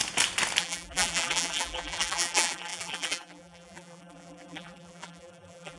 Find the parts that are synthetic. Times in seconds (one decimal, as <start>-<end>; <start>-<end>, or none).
0.6-5.8